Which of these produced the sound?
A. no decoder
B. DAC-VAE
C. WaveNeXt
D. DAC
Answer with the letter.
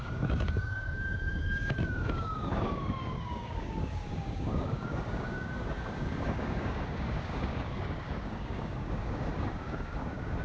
D